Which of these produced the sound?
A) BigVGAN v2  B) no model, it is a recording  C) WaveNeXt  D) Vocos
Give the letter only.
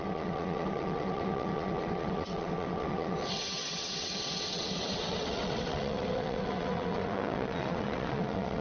C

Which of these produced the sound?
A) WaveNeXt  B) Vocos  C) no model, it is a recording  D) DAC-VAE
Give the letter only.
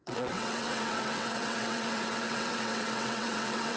A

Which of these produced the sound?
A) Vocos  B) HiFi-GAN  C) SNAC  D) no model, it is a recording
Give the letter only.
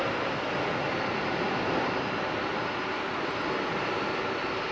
D